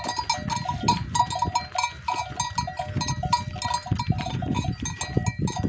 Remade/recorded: recorded